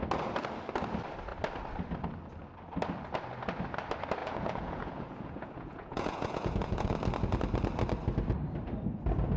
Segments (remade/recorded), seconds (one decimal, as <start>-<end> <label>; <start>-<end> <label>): 0.0-4.2 recorded; 4.2-6.9 remade; 6.9-9.4 recorded